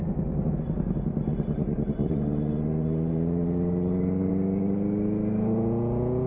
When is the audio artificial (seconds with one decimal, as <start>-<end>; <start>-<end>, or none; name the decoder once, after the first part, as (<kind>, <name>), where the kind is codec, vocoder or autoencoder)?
1.3-4.3 (vocoder, BigVGAN v2)